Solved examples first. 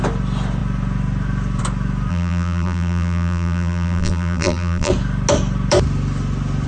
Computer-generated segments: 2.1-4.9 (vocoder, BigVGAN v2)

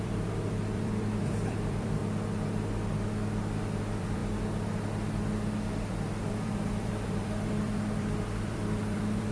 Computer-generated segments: 0.0-2.0 (vocoder, BigVGAN v2); 3.8-4.2; 6.2-9.3

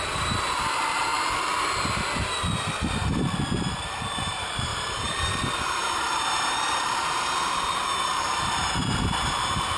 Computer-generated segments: 0.0-1.1 (vocoder, BigVGAN v2); 4.2-9.8

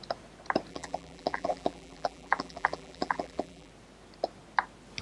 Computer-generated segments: 0.7-3.7 (vocoder, BigVGAN v2)

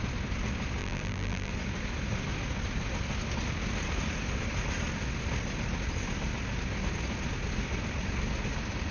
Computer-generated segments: 0.8-1.5 (vocoder, BigVGAN v2)